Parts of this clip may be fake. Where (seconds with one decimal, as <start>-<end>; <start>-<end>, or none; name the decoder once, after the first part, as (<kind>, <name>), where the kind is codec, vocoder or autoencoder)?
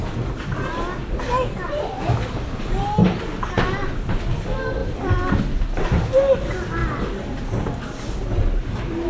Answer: 1.0-1.8 (vocoder, BigVGAN v2); 4.8-5.4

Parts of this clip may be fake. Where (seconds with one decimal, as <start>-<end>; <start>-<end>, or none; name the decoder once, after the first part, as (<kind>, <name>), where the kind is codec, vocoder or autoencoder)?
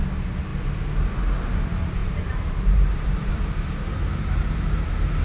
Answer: 2.0-5.2 (vocoder, BigVGAN v2)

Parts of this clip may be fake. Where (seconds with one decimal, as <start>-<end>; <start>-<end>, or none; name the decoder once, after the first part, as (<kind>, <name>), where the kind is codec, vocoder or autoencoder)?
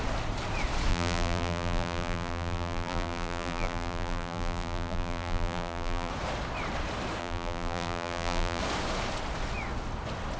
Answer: 0.9-6.1 (vocoder, BigVGAN v2); 7.2-8.6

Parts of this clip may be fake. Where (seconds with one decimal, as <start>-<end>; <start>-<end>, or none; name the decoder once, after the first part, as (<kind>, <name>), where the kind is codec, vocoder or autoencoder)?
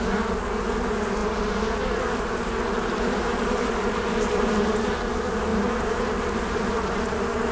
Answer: 3.4-4.9 (vocoder, BigVGAN v2)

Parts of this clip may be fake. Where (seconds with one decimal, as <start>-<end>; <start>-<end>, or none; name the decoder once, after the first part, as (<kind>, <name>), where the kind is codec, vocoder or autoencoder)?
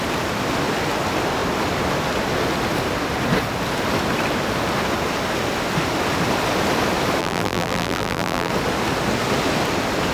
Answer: 7.2-8.5 (vocoder, BigVGAN v2)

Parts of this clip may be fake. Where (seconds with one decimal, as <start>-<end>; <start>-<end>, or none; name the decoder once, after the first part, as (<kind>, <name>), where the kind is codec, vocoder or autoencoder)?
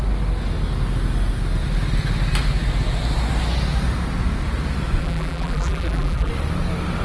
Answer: 5.0-6.3 (vocoder, BigVGAN v2)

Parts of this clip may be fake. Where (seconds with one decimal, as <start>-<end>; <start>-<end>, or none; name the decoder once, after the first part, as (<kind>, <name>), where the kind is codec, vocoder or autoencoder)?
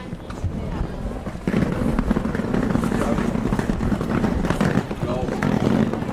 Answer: none